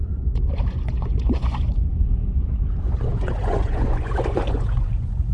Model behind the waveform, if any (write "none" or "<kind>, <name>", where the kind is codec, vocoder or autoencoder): vocoder, Vocos